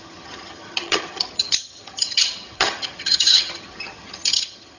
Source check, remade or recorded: remade